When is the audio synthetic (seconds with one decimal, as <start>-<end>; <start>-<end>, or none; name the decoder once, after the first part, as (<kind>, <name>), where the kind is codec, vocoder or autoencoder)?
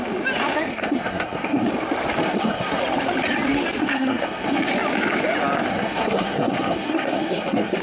0.7-1.7 (codec, SNAC); 2.2-2.8; 3.8-4.7; 5.7-7.8